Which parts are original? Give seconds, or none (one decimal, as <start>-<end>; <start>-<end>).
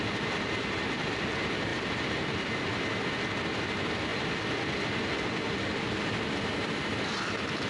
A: 0.0-7.7